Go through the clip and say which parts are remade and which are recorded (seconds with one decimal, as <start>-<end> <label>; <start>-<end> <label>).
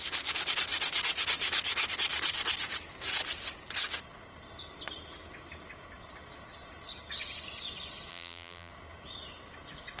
0.0-8.1 recorded; 8.1-8.7 remade; 8.7-10.0 recorded